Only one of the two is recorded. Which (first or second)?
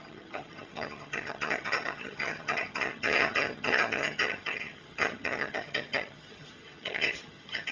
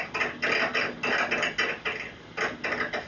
second